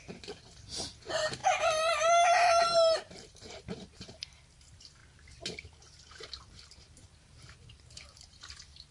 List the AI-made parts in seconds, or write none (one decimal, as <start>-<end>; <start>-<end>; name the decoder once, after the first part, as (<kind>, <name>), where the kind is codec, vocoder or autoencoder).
0.0-1.4 (vocoder, BigVGAN v2); 2.1-5.0; 6.4-8.9